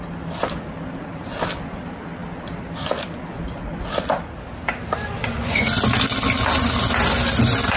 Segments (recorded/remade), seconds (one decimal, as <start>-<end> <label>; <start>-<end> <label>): 0.0-5.2 recorded; 5.2-5.8 remade; 5.8-7.8 recorded